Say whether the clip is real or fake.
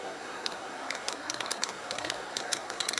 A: fake